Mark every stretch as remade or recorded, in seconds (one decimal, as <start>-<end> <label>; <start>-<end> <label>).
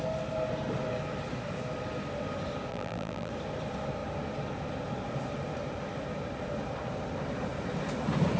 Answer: 0.0-2.7 recorded; 2.7-3.3 remade; 3.3-8.4 recorded